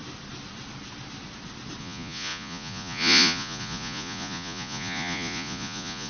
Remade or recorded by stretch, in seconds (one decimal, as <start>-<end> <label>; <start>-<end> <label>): 0.0-1.8 recorded; 1.8-6.1 remade